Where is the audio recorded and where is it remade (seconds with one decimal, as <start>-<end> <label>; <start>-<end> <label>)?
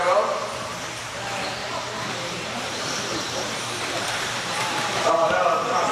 0.0-1.6 recorded; 1.6-5.1 remade; 5.1-5.9 recorded